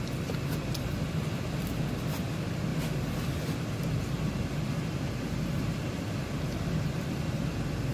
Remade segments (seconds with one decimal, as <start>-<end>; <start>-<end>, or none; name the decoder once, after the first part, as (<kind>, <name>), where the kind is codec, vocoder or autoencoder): none